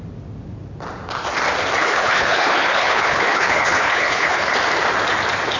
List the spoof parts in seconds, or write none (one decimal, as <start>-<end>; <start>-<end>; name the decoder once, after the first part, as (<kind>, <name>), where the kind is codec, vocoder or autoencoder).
1.8-4.5 (codec, HILCodec)